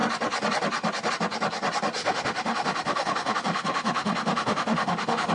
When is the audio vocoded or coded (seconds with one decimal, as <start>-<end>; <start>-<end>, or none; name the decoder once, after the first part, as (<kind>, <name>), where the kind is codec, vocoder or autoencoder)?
2.0-5.3 (autoencoder, DAC-VAE)